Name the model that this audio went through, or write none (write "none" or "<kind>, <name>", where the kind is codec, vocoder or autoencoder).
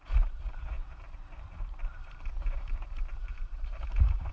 vocoder, BigVGAN v2